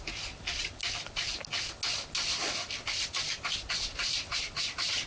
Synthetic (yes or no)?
no